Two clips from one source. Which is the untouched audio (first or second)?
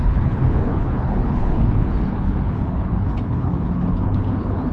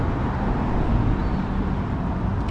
second